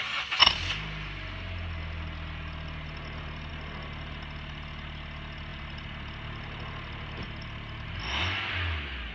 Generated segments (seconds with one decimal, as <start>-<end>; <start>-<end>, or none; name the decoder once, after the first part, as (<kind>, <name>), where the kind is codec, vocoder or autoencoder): none